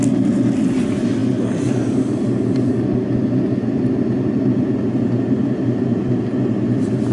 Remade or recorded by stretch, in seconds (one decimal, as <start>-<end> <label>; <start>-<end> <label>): 0.0-7.1 recorded